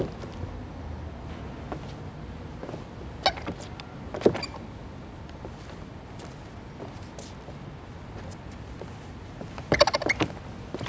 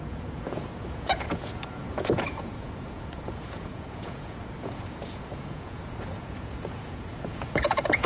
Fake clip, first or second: second